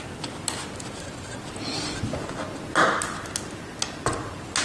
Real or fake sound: real